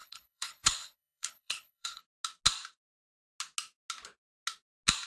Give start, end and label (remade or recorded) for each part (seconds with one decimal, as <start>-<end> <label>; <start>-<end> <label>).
0.0-2.0 remade; 2.0-5.1 recorded